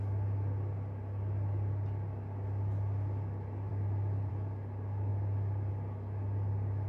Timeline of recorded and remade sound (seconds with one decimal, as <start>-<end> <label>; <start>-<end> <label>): 0.0-6.9 recorded